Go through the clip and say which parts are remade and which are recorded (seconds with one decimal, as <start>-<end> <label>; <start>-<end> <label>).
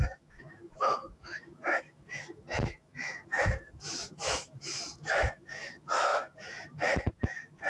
0.0-7.7 remade